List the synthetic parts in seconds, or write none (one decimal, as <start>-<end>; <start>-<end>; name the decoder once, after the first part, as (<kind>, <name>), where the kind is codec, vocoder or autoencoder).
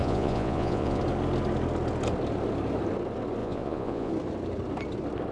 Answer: 0.0-1.0 (vocoder, Vocos); 3.4-4.1